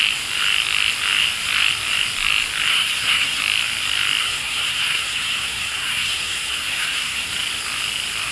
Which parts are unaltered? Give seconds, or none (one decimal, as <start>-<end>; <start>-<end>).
0.0-2.7; 3.4-4.2; 7.3-8.3